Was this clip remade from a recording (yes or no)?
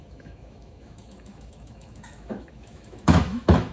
yes